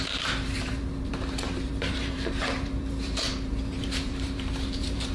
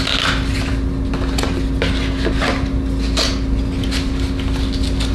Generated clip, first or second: first